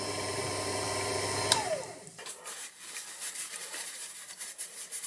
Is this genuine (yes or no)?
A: no